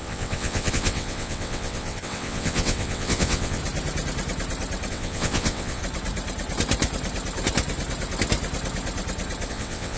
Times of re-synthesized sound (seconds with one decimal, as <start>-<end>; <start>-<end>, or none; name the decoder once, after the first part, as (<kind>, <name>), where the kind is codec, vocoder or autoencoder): 0.0-3.6 (vocoder, WaveNeXt); 4.9-5.8; 9.5-10.0